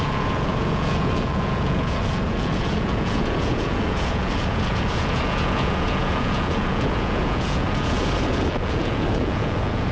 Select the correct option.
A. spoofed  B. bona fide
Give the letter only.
A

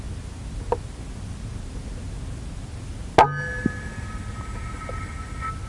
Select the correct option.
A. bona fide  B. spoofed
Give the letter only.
A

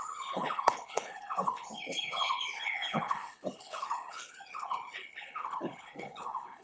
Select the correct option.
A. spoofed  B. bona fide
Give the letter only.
A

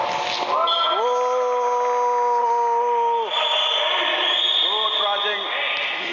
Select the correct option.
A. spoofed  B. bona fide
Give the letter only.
B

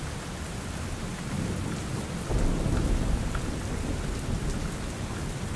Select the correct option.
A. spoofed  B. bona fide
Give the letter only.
B